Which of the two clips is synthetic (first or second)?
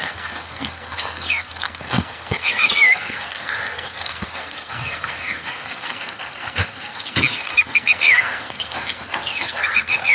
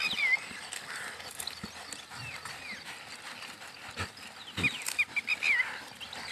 first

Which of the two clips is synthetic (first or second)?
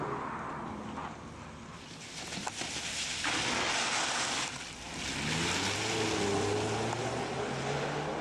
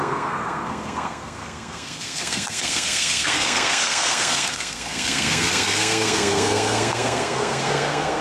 second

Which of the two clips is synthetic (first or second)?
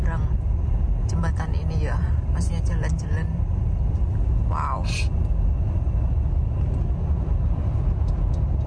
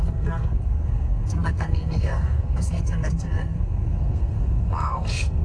second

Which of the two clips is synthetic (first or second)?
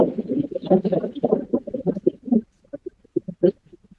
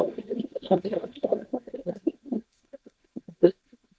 second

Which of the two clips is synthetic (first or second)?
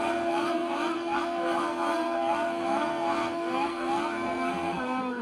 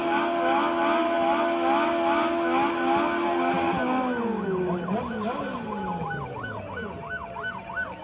first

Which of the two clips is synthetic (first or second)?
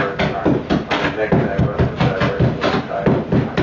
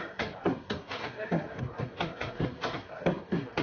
second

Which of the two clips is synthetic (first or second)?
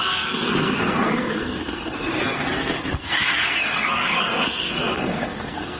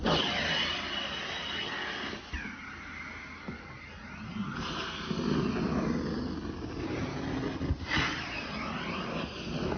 first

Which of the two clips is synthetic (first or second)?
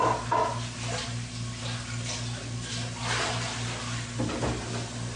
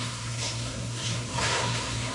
second